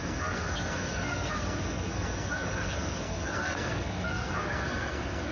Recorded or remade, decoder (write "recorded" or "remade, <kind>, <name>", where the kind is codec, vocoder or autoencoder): remade, codec, SNAC